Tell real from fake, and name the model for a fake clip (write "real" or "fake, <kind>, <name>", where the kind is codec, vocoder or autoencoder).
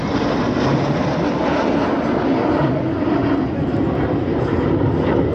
real